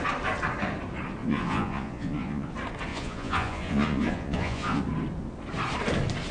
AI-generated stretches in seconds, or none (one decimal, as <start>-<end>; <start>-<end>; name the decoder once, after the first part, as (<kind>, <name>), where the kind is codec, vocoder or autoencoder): 1.2-2.5 (vocoder, Vocos); 2.9-4.8